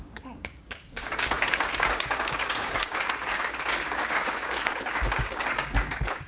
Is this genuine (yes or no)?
no